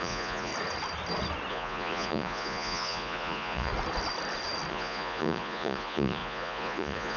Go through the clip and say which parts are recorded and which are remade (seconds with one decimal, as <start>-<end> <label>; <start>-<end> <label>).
0.0-0.5 remade; 0.5-1.5 recorded; 1.5-3.7 remade; 3.7-4.7 recorded; 4.7-7.2 remade